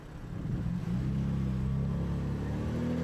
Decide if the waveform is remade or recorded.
recorded